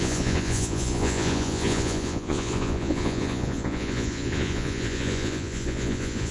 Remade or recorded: remade